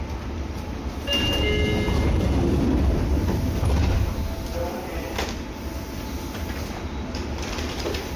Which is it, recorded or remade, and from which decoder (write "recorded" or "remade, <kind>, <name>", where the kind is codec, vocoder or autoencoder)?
recorded